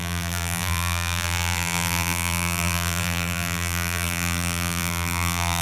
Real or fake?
fake